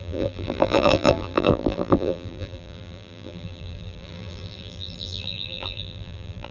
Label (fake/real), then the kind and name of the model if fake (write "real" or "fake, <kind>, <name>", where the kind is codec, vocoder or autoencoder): fake, vocoder, BigVGAN v2